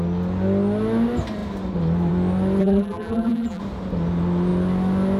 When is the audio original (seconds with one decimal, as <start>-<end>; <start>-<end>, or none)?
0.0-2.6; 3.6-5.2